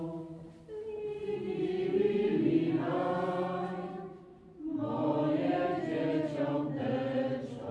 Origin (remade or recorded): recorded